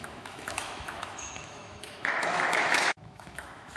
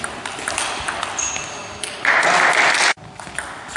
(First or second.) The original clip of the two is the second